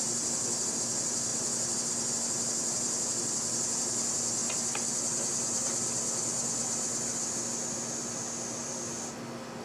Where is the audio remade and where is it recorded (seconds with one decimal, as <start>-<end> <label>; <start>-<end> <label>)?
0.0-9.6 recorded